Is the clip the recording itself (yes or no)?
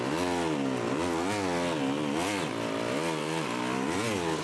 yes